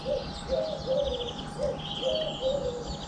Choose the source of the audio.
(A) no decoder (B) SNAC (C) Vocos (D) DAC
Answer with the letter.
A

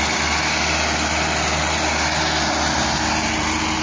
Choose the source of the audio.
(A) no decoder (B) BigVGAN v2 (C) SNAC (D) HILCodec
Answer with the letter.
A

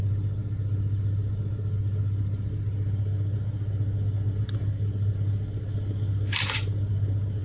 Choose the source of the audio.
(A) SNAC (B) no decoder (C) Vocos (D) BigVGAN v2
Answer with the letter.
B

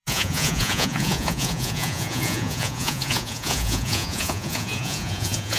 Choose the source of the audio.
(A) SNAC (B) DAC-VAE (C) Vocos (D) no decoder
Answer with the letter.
C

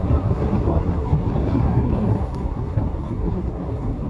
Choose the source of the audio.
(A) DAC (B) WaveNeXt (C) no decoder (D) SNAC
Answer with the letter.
D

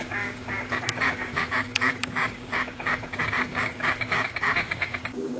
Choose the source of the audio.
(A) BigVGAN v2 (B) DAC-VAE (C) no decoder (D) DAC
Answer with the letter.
D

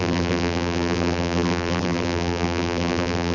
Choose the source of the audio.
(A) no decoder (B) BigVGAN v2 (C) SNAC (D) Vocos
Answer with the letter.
B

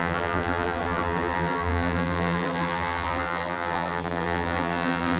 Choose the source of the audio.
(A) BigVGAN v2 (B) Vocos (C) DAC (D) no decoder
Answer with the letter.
A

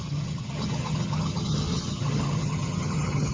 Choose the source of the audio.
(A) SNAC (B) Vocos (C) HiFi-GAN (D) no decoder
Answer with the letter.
C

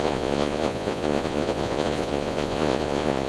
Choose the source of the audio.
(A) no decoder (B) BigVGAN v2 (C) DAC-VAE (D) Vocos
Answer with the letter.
D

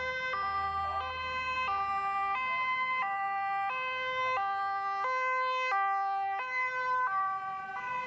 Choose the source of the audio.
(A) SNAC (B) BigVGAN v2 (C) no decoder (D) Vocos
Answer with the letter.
C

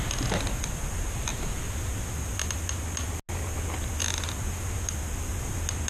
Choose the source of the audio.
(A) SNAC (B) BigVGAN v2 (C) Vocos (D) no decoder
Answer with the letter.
D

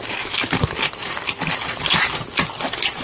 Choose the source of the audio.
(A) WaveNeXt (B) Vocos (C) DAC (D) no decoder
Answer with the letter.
D